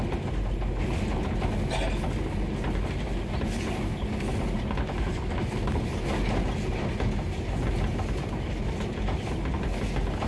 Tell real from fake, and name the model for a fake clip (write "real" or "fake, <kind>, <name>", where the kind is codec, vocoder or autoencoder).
real